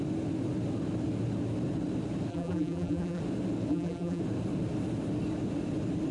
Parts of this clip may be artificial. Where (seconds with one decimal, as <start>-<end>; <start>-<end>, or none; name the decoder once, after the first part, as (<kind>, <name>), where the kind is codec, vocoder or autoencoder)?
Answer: 2.3-3.2 (vocoder, BigVGAN v2); 3.7-4.2